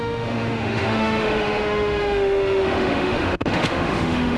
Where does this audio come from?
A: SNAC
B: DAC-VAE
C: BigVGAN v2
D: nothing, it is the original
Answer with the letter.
B